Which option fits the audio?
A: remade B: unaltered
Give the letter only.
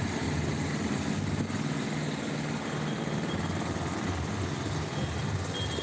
B